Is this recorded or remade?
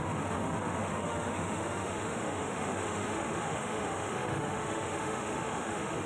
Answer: remade